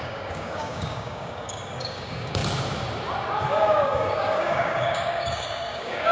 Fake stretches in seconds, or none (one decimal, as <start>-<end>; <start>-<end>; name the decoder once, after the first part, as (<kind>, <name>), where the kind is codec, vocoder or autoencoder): 0.0-2.4 (codec, DAC); 3.5-6.1